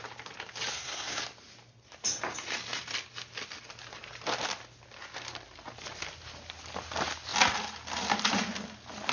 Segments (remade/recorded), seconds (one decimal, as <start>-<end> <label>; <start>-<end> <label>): 0.0-0.7 recorded; 0.7-1.2 remade; 1.2-9.1 recorded